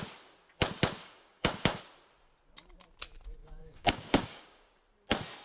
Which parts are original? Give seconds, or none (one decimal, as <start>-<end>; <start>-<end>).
0.0-1.0; 1.8-3.4; 4.8-5.4